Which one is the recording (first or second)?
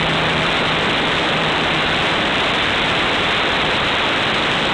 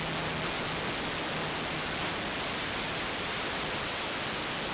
second